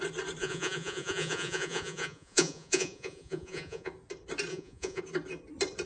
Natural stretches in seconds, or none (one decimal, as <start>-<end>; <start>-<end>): 0.0-0.4; 3.9-4.5; 5.0-5.9